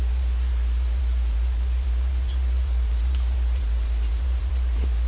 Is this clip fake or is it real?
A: fake